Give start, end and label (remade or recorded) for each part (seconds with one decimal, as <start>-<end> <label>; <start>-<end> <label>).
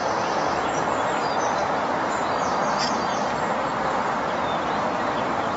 0.0-0.5 remade; 0.5-1.6 recorded; 1.6-2.6 remade; 2.6-3.7 recorded; 3.7-5.6 remade